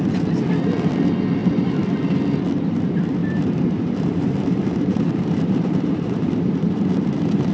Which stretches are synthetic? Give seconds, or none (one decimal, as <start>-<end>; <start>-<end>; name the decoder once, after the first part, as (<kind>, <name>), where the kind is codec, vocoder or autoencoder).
3.2-7.5 (vocoder, BigVGAN v2)